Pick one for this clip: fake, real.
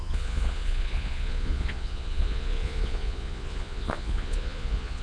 fake